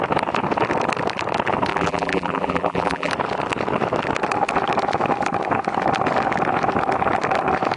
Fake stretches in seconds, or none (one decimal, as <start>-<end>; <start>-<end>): 1.7-3.1